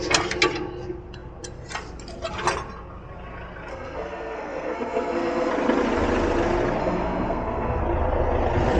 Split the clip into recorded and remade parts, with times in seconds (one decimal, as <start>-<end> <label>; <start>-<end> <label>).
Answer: 0.0-3.7 recorded; 3.7-5.5 remade; 5.5-6.8 recorded; 6.8-7.8 remade; 7.8-8.8 recorded